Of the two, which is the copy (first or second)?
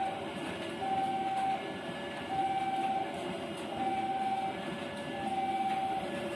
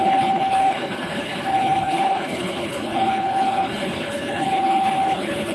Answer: second